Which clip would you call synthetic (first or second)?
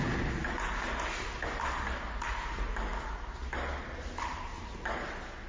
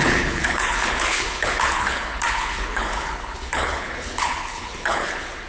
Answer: second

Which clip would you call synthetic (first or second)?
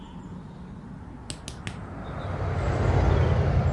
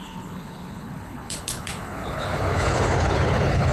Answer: second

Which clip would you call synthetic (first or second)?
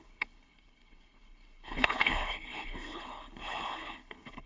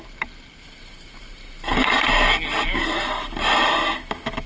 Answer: first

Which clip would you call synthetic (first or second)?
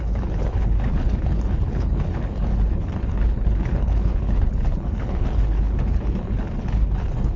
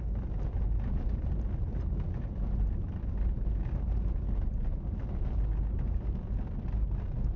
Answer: first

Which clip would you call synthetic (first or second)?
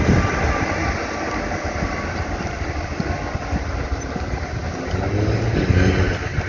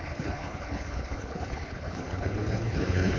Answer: second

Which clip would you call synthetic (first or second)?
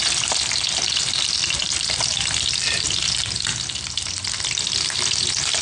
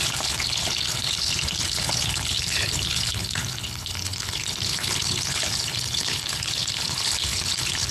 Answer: second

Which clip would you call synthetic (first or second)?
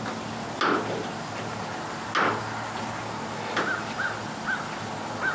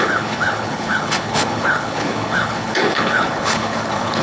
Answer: second